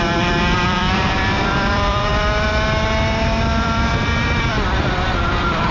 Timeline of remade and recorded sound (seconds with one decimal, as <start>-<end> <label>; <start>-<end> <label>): 0.0-2.1 remade; 2.1-3.2 recorded; 3.2-5.7 remade